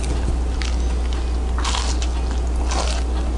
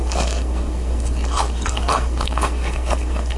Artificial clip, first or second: second